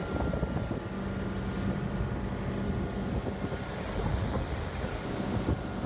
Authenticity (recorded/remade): recorded